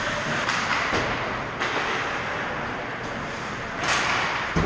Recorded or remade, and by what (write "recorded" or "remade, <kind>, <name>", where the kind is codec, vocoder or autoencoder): recorded